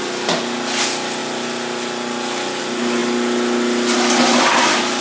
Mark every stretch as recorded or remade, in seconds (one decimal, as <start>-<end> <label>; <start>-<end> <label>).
0.0-5.0 recorded